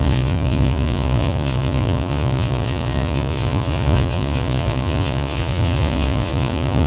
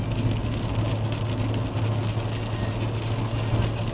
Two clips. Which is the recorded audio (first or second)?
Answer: second